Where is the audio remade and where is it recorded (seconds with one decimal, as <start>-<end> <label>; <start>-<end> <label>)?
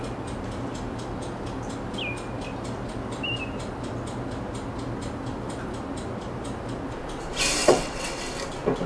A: 0.0-7.6 recorded; 7.6-8.3 remade; 8.3-8.9 recorded